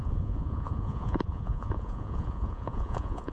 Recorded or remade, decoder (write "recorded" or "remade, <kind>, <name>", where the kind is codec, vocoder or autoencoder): remade, vocoder, Vocos